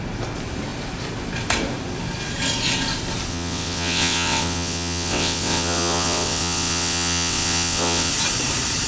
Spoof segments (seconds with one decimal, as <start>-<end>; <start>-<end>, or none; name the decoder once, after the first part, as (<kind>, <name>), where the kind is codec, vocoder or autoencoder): 3.3-8.1 (vocoder, WaveNeXt)